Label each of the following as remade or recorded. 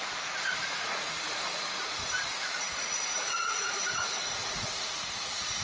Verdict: remade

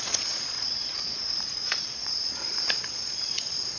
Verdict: remade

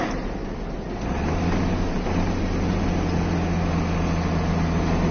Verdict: recorded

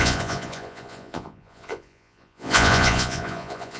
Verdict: remade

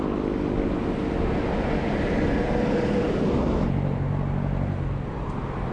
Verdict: recorded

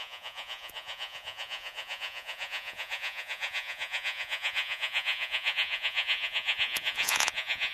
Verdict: remade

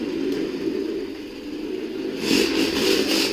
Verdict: recorded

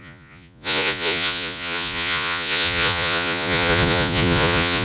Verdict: remade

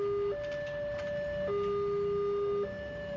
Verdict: recorded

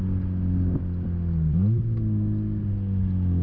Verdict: recorded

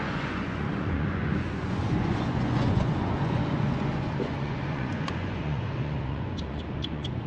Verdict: remade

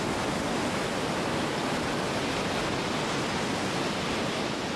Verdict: recorded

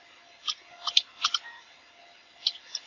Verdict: recorded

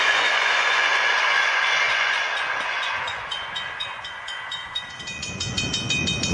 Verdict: remade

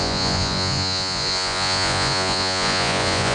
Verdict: remade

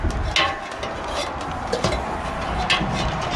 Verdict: recorded